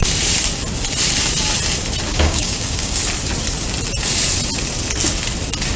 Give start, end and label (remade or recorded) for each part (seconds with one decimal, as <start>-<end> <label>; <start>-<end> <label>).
0.0-2.1 recorded; 2.1-3.0 remade; 3.0-5.8 recorded